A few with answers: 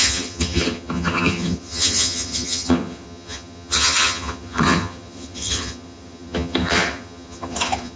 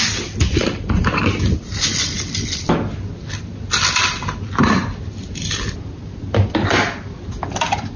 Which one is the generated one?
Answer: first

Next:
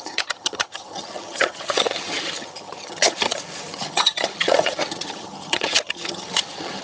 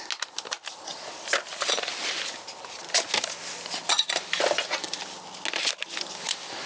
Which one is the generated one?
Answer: first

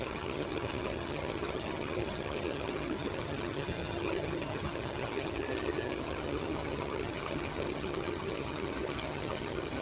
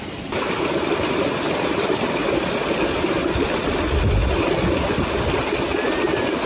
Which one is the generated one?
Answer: first